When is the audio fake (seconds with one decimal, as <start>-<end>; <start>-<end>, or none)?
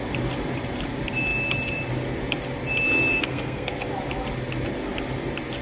3.1-3.7